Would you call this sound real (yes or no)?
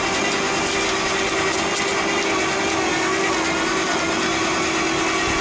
yes